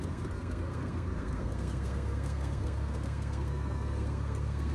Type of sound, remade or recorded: remade